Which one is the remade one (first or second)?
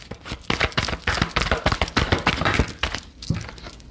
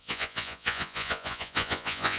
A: second